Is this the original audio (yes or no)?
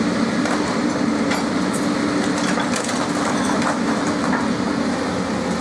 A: yes